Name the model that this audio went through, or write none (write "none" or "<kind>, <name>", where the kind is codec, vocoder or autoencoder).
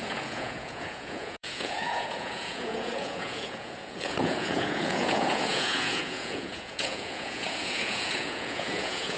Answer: vocoder, Vocos